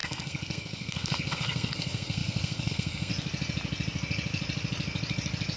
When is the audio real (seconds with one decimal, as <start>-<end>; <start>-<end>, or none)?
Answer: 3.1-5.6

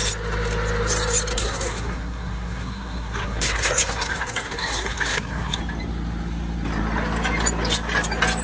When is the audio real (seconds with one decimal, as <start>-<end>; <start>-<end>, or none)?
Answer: 0.0-1.3; 5.6-8.4

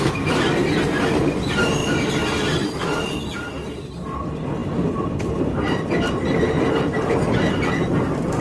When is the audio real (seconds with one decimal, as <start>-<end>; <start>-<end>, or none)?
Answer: 0.0-8.4

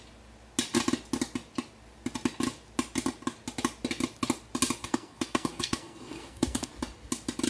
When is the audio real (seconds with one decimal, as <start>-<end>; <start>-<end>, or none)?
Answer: 0.0-4.8; 6.7-7.5

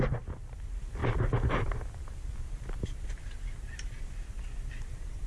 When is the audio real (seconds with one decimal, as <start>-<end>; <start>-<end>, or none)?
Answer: 0.0-5.3

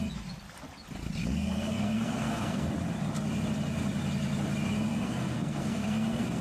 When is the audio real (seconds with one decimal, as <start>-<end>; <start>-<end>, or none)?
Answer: 0.0-1.2; 2.7-4.9

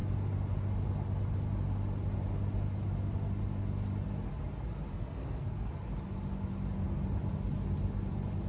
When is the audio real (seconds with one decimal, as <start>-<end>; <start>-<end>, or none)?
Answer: 0.0-4.9; 5.7-8.5

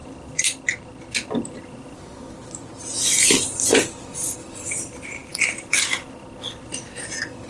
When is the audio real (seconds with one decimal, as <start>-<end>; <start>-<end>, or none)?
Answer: 0.0-7.5